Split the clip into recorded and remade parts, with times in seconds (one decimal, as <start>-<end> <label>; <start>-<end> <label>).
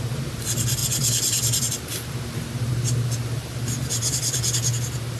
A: 0.0-5.2 recorded